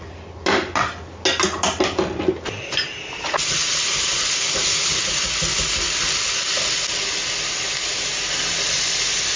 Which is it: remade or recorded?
recorded